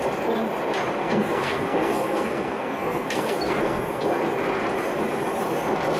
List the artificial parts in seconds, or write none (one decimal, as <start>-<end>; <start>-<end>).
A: 1.0-4.2